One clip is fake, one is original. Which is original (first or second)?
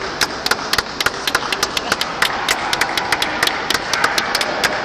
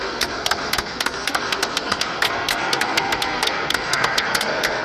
first